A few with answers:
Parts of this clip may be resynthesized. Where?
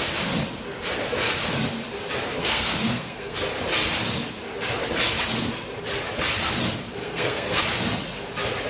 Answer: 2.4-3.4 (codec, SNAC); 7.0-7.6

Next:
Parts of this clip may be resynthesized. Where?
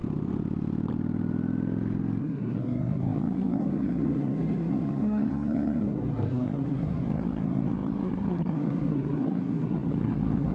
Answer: 2.2-10.5 (codec, SNAC)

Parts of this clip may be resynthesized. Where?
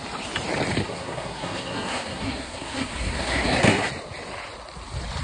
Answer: 0.8-3.9 (codec, SNAC)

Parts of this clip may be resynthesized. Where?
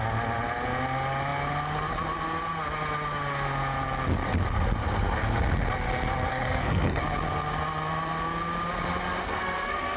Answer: 6.3-7.0 (codec, SNAC); 9.2-10.0